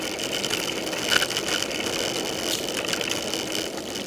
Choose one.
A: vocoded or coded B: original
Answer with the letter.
B